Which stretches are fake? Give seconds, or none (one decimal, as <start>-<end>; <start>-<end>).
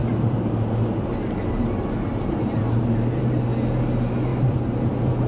0.0-0.6; 2.1-2.8; 4.3-5.3